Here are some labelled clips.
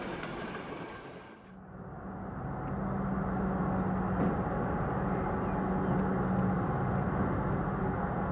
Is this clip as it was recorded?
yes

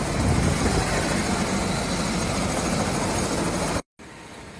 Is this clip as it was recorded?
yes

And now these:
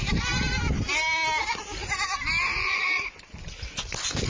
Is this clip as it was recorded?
yes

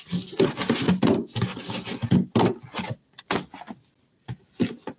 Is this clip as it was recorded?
yes